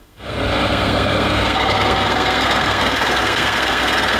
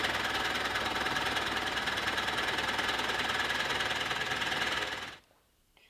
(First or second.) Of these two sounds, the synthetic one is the first